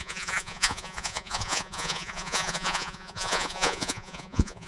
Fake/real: fake